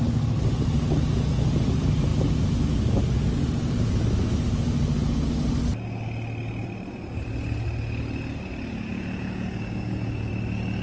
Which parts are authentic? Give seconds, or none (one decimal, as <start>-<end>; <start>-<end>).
0.0-8.9; 10.3-10.8